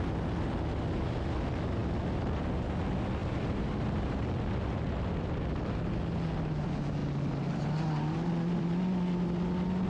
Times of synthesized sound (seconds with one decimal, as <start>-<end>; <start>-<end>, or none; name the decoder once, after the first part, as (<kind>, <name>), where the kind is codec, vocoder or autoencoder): 3.2-4.2 (vocoder, BigVGAN v2)